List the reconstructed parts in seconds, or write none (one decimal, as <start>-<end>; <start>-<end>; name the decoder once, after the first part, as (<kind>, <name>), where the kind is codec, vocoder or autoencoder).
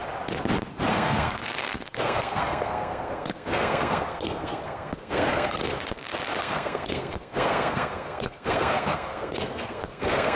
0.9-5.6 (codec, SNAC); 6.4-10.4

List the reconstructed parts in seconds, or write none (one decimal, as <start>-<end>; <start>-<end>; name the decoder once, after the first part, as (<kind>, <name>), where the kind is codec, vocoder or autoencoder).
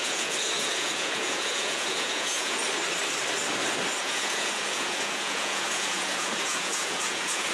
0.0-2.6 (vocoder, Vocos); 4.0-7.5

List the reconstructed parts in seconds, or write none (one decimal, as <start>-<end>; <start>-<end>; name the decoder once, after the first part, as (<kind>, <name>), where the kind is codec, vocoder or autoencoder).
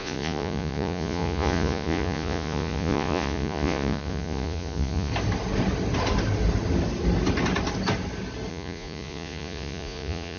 0.0-5.1 (vocoder, Vocos); 8.5-10.4